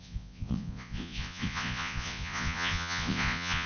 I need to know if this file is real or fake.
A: fake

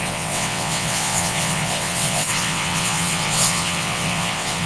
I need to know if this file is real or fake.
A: fake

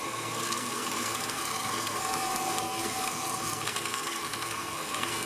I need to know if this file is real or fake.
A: fake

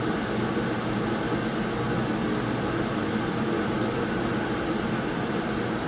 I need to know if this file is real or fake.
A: real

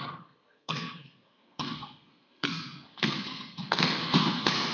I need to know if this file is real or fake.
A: fake